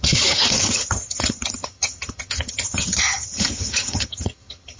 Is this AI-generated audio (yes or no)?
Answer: yes